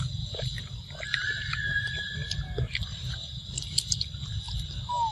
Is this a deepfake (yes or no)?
no